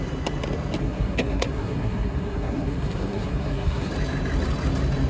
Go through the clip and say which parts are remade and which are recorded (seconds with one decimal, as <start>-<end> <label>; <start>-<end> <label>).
0.0-0.8 recorded; 0.8-3.9 remade; 3.9-5.1 recorded